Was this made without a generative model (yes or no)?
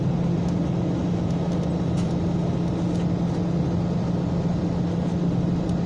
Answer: yes